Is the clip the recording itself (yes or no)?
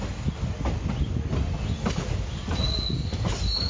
yes